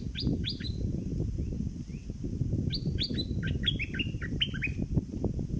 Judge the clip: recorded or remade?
recorded